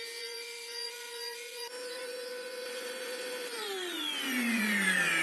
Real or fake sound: fake